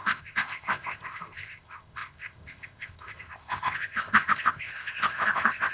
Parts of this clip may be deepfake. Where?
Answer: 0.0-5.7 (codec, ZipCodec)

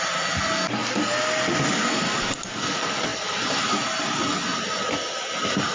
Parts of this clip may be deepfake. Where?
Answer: none

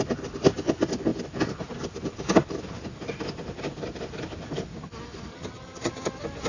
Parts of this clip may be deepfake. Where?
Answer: 5.3-6.1 (vocoder, HiFi-GAN)

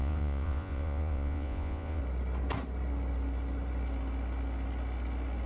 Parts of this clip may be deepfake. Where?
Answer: 0.0-2.0 (vocoder, Vocos)

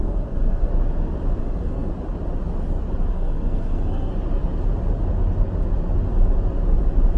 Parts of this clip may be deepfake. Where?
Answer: 0.0-0.7 (codec, SNAC); 1.4-1.9; 3.1-4.1

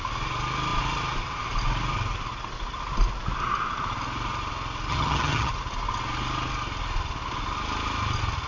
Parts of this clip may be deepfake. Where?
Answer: 4.9-5.5 (vocoder, HiFi-GAN)

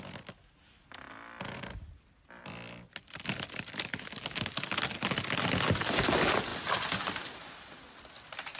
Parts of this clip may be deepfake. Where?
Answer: none

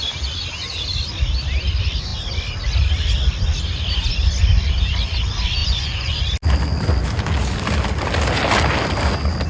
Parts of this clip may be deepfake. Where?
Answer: 5.6-6.2 (vocoder, Vocos)